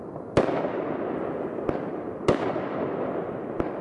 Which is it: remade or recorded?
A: recorded